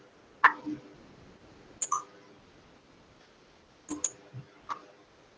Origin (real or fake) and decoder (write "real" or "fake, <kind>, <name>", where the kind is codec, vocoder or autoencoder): real